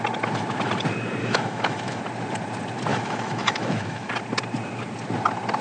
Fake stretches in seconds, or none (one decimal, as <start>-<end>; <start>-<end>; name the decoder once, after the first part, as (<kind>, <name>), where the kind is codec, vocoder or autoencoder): 1.2-2.0 (autoencoder, DAC-VAE); 2.9-4.1